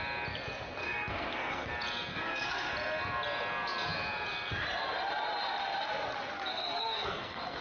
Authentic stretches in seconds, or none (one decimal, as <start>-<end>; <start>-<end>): 0.0-0.8; 1.7-2.1; 2.7-6.5